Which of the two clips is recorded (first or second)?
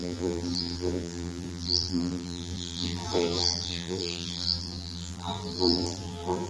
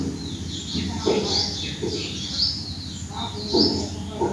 second